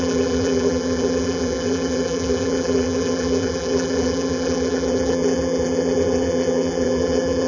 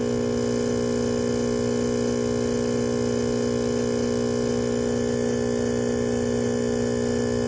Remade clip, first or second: first